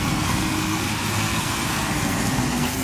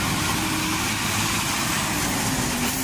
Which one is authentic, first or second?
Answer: second